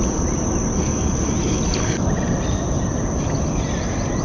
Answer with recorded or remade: recorded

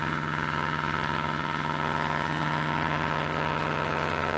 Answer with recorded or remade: remade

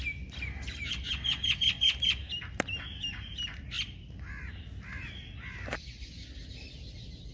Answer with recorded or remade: recorded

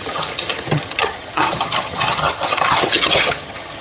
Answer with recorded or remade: remade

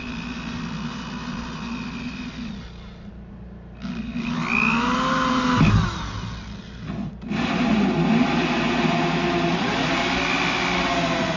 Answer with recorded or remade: recorded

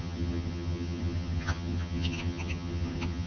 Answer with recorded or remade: remade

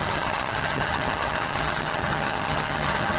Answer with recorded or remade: remade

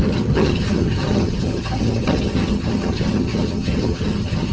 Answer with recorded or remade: remade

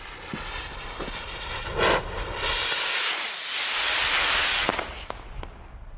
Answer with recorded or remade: recorded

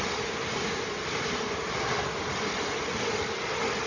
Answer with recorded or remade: recorded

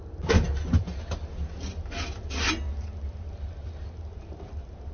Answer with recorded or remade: recorded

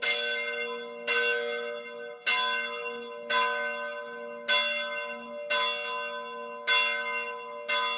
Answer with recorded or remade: recorded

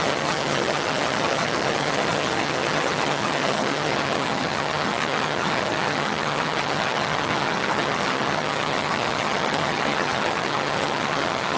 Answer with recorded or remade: remade